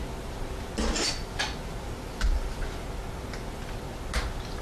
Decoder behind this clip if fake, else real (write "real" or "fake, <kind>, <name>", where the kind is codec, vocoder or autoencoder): real